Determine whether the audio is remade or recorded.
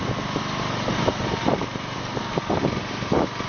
recorded